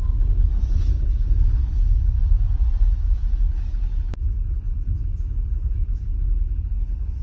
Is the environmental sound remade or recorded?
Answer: recorded